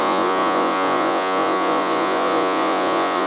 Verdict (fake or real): fake